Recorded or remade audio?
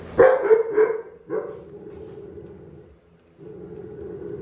recorded